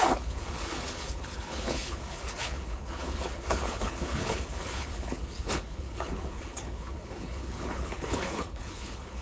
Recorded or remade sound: remade